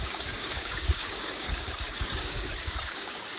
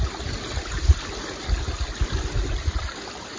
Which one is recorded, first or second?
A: second